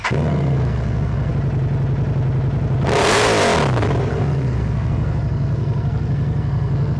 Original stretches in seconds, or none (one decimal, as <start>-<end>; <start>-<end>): 1.3-4.1